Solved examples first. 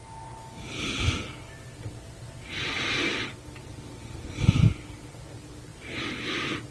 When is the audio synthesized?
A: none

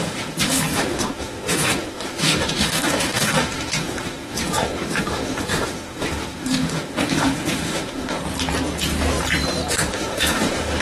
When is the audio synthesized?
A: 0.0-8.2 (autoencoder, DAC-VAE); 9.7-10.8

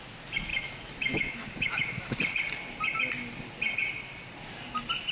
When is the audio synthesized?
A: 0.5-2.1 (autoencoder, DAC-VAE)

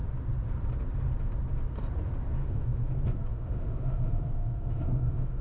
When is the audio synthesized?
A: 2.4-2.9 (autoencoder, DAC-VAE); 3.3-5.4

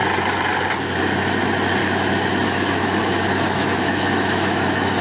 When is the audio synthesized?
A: 1.8-5.0 (autoencoder, DAC-VAE)